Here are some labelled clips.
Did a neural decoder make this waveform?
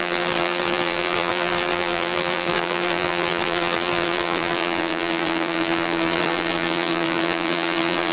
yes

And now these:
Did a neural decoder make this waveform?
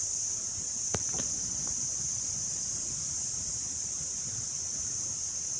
yes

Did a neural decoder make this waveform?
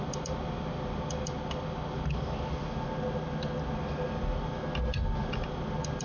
no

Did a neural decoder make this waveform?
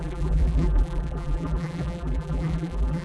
yes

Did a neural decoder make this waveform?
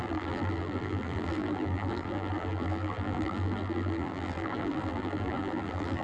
yes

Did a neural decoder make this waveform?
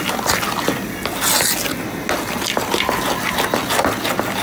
no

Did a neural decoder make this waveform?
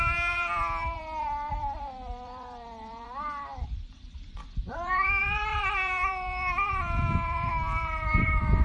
yes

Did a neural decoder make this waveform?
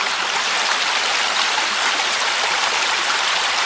yes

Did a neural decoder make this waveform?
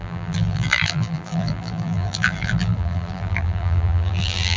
yes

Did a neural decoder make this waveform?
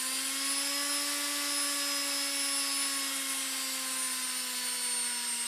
no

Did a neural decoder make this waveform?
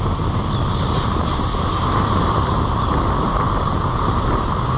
no